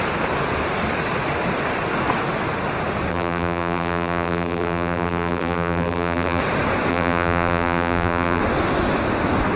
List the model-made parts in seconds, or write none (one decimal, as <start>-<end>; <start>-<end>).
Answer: 3.1-6.4; 6.9-8.4